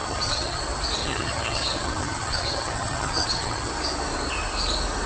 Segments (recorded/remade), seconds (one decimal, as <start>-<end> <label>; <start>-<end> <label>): 0.0-0.6 remade; 0.6-1.0 recorded; 1.0-3.7 remade; 3.7-5.1 recorded